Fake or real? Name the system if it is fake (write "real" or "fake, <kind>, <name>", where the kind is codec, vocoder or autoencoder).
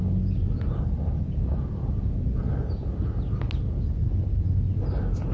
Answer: real